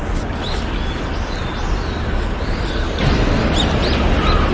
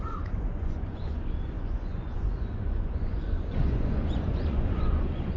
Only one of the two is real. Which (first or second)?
first